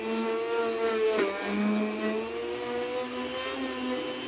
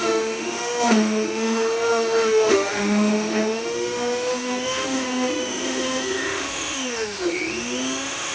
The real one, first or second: first